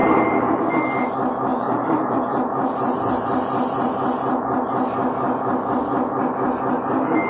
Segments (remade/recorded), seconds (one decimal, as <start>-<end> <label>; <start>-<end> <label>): 0.0-0.7 remade; 0.7-1.5 recorded; 1.5-5.7 remade; 5.7-7.3 recorded

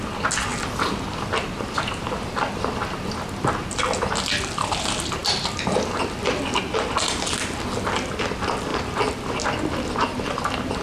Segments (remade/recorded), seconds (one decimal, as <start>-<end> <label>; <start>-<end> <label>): 0.0-0.5 recorded; 0.5-3.8 remade; 3.8-5.2 recorded; 5.2-6.6 remade; 6.6-10.8 recorded